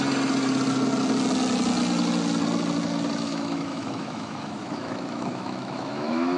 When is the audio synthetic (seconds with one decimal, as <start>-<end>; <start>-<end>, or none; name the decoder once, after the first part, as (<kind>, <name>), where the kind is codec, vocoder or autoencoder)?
3.3-6.4 (autoencoder, DAC-VAE)